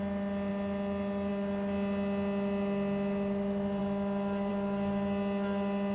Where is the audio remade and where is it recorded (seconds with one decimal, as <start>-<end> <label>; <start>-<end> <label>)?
0.0-5.9 recorded